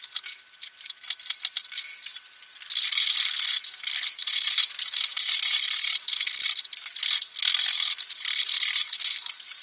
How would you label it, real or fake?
real